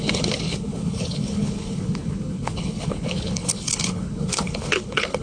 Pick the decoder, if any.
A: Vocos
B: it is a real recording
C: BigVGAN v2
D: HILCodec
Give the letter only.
D